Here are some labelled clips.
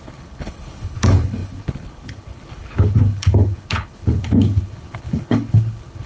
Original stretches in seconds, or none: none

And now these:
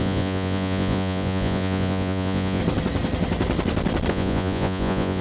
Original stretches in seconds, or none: 2.6-4.1

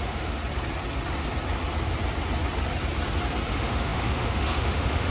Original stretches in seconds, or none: 0.4-3.5

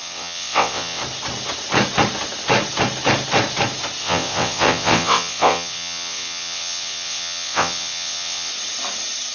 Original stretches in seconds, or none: 1.0-4.0; 8.5-9.3

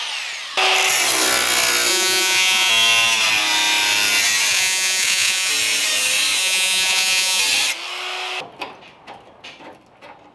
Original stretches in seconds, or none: 0.0-1.9; 2.7-4.5; 5.5-6.4; 7.4-10.3

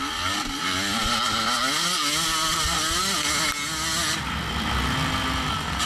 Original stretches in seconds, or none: 0.0-5.9

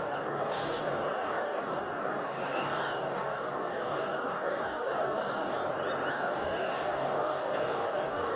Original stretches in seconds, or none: 5.6-6.1

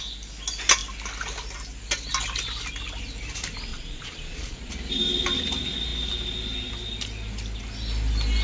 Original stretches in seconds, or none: 0.0-3.7; 4.7-8.4